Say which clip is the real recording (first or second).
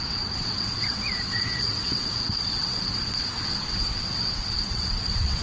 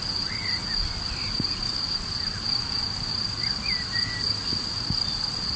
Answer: second